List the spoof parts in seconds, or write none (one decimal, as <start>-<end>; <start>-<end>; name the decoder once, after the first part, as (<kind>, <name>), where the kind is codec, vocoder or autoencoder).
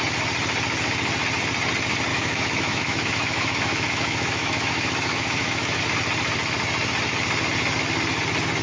2.1-5.8 (autoencoder, DAC-VAE)